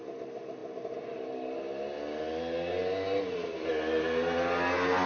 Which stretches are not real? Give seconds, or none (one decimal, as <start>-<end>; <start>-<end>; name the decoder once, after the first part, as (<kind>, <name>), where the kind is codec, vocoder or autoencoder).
none